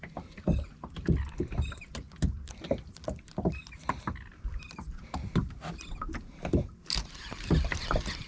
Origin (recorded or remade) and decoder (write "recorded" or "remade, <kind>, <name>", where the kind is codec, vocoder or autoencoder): recorded